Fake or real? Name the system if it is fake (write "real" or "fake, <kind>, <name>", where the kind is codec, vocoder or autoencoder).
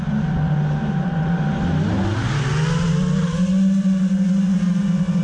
real